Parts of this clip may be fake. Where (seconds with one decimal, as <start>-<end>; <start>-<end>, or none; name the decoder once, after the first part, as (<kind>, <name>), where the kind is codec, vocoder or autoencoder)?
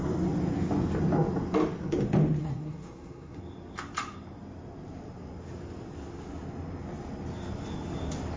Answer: 2.4-3.4 (codec, SNAC)